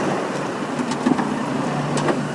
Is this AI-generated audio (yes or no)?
no